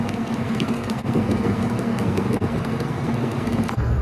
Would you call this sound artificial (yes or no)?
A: yes